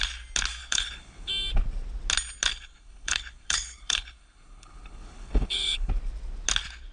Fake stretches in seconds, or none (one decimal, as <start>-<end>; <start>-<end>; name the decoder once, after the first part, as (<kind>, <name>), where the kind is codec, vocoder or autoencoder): 0.6-1.3 (codec, HILCodec); 2.5-5.9